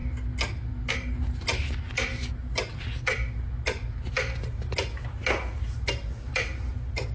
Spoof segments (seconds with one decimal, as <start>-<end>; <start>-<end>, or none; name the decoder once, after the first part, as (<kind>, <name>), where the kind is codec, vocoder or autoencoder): none